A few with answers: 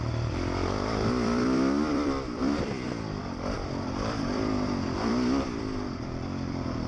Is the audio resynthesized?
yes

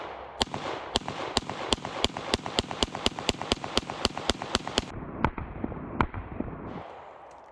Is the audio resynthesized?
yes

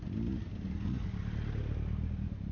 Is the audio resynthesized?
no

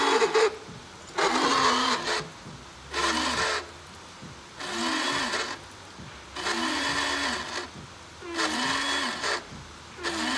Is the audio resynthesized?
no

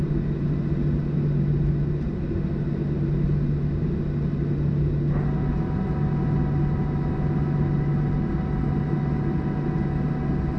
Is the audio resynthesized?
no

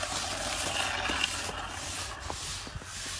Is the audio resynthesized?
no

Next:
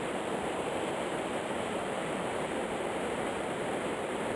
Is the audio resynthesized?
yes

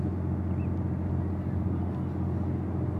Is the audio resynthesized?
no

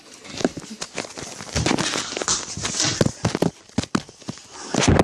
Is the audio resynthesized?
no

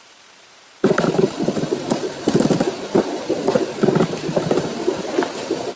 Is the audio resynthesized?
yes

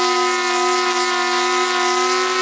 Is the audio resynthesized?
no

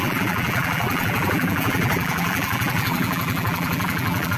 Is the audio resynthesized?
yes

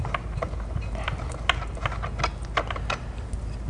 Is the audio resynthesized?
no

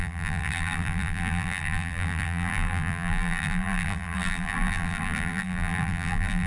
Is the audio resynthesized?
yes